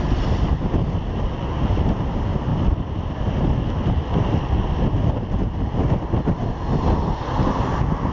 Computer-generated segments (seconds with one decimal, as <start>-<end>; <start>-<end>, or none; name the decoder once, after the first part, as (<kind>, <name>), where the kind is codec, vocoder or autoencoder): 2.5-5.1 (vocoder, BigVGAN v2)

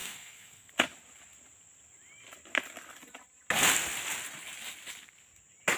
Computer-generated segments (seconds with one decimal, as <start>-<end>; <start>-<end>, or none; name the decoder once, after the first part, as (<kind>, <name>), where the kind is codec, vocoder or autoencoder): 0.0-0.7 (codec, SNAC)

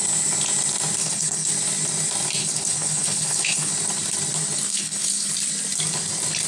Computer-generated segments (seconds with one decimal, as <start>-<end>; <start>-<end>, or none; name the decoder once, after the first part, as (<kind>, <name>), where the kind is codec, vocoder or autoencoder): 1.0-1.5 (codec, HILCodec); 2.4-3.7; 4.7-5.3

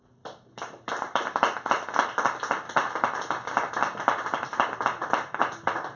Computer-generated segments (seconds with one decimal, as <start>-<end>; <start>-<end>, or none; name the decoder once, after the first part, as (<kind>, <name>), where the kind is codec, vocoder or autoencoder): none